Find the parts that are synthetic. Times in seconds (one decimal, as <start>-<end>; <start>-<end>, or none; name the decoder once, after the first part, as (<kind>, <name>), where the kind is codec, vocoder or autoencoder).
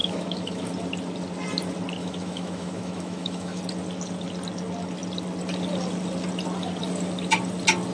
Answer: 0.0-0.7 (autoencoder, DAC-VAE); 2.0-3.6